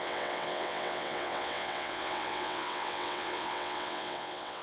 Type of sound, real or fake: fake